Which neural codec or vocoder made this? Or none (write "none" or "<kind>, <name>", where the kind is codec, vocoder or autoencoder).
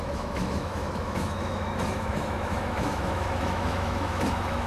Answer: autoencoder, DAC-VAE